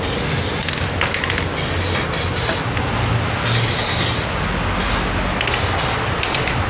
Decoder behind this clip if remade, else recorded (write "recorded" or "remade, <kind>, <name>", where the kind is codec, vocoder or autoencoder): recorded